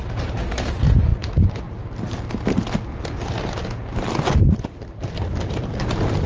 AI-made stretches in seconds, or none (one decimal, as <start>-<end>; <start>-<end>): none